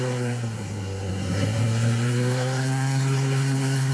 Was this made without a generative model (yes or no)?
no